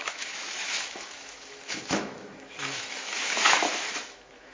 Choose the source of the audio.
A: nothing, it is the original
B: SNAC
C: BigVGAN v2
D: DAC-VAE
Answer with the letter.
D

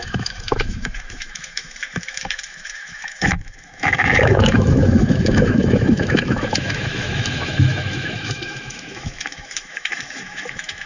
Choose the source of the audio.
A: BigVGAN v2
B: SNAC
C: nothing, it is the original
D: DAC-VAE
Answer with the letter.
D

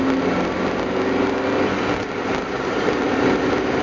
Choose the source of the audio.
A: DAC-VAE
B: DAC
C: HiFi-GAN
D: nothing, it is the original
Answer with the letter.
D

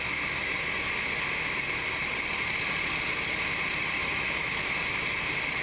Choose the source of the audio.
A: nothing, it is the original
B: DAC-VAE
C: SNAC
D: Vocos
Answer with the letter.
A